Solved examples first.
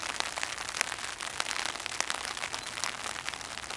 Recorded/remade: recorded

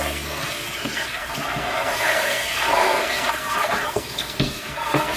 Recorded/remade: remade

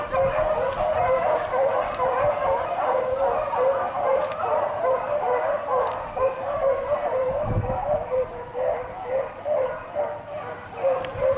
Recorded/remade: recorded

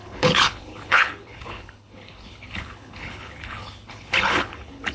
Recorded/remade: remade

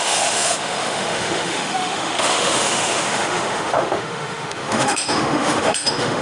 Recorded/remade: remade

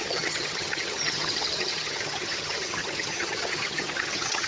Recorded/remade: remade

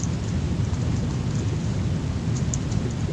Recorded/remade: recorded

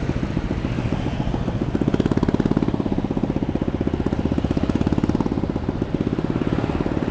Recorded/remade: recorded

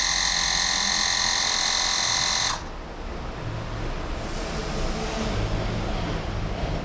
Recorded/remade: recorded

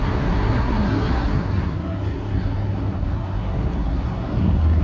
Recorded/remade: remade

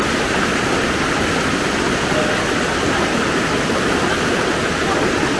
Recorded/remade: recorded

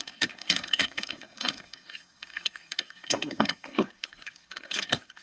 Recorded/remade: remade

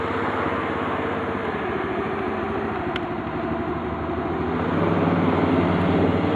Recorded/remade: recorded